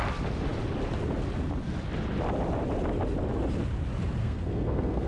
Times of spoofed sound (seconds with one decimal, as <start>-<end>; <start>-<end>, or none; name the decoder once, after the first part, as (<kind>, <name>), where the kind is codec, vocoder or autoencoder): 4.2-5.1 (codec, SNAC)